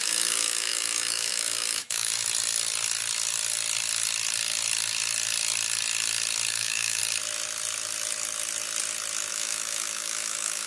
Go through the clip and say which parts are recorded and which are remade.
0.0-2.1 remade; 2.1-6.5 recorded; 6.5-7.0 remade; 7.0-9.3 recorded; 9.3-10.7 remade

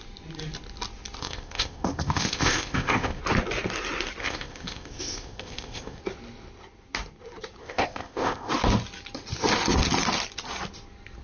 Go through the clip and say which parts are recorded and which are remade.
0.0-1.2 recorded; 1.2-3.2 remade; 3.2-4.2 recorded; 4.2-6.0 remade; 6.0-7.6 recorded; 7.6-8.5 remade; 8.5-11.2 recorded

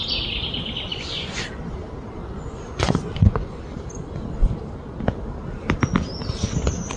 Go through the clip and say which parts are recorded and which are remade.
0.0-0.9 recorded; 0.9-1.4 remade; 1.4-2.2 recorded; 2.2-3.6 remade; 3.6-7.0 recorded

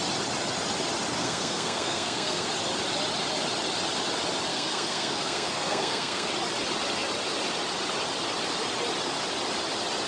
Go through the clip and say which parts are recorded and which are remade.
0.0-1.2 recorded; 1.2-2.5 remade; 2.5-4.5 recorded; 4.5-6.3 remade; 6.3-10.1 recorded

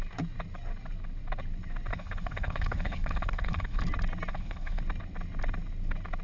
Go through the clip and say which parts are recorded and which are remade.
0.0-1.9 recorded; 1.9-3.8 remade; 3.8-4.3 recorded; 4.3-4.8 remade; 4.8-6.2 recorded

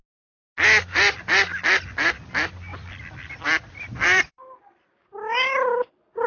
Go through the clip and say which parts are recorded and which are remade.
0.0-2.7 recorded; 2.7-4.9 remade; 4.9-6.3 recorded

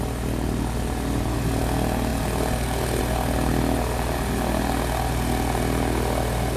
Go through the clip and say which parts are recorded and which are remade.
0.0-6.6 recorded